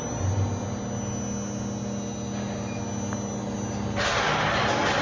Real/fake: real